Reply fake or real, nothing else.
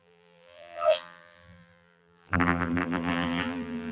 fake